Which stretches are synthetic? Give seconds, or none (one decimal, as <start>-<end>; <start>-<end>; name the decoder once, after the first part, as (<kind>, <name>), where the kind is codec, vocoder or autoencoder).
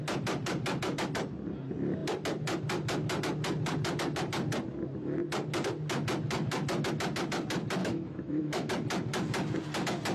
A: 7.8-8.7 (autoencoder, DAC-VAE)